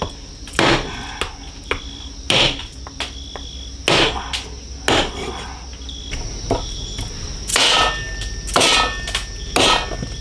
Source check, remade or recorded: recorded